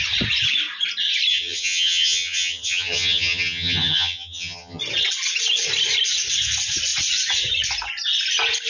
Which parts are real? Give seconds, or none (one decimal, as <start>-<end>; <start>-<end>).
0.0-1.3; 4.8-8.7